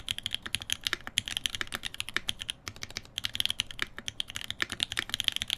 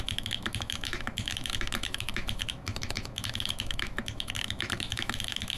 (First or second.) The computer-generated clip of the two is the second